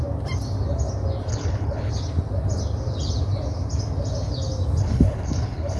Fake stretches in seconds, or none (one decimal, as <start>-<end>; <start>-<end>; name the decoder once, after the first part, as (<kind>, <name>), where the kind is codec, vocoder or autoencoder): 1.3-1.9 (codec, HILCodec); 4.8-5.8